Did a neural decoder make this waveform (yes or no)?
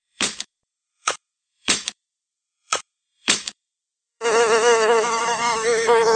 yes